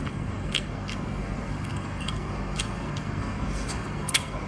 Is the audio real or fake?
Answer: fake